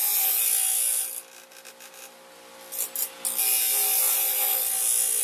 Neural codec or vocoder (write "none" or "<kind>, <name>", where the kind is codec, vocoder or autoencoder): none